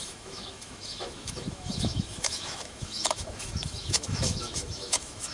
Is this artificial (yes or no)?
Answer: yes